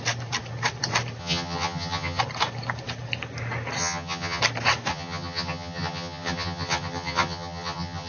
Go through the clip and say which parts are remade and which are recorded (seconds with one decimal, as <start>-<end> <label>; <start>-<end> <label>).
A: 0.0-1.2 recorded; 1.2-2.2 remade; 2.2-3.8 recorded; 3.8-4.4 remade; 4.4-4.9 recorded; 4.9-8.1 remade